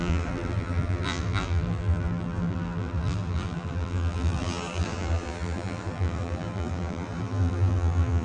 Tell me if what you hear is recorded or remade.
remade